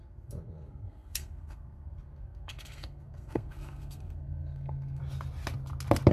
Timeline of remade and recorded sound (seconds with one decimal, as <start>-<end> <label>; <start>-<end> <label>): 0.0-5.0 remade; 5.0-6.1 recorded